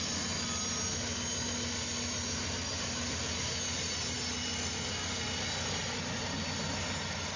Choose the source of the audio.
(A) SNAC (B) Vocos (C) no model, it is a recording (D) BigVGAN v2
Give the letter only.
C